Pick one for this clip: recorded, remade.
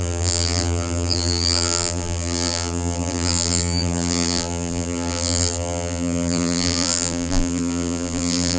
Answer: remade